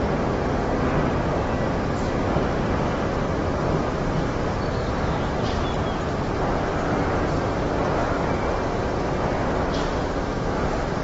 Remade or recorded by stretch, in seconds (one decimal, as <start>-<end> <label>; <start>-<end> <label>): 0.0-6.7 recorded; 6.7-7.2 remade; 7.2-11.0 recorded